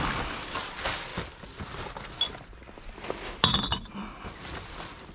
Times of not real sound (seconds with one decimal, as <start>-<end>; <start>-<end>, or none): none